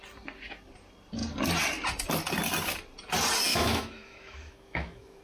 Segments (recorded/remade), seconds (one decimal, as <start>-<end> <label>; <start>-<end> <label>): 0.0-3.5 recorded; 3.5-5.2 remade

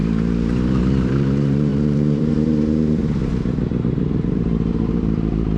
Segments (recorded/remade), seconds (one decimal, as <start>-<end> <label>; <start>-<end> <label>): 0.0-3.0 remade; 3.0-4.3 recorded; 4.3-5.6 remade

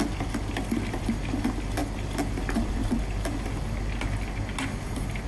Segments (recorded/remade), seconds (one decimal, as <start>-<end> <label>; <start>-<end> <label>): 0.0-5.3 recorded

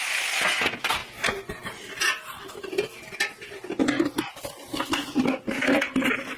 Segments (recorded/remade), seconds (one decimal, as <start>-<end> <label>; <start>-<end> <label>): 0.0-6.4 recorded